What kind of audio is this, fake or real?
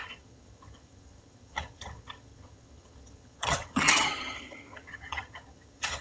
fake